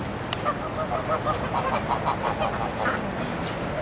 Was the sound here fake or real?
real